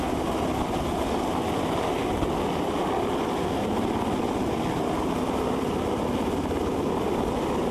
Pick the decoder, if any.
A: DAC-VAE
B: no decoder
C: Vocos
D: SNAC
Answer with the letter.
B